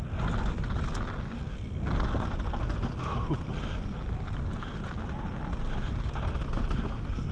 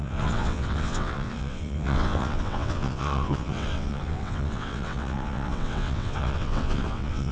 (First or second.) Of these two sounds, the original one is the first